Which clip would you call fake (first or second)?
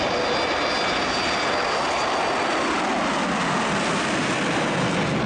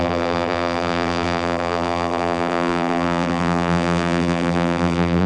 second